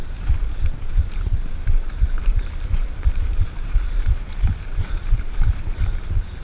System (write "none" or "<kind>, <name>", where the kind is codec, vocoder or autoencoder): vocoder, BigVGAN v2